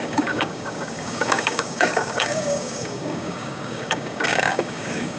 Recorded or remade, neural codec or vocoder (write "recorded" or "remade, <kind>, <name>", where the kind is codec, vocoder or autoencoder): remade, codec, DAC